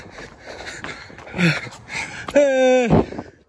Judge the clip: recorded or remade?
recorded